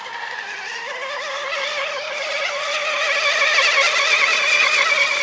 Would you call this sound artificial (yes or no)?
no